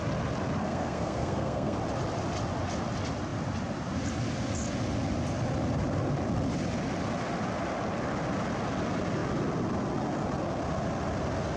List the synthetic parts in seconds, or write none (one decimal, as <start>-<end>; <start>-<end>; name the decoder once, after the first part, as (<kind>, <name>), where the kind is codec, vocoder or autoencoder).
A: 0.6-1.8 (codec, SNAC)